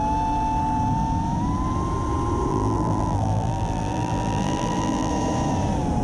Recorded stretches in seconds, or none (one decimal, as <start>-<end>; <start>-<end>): 0.0-2.5; 5.1-6.0